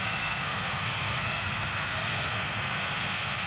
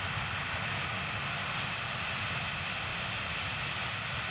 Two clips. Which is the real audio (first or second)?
second